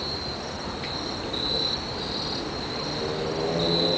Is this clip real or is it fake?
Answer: real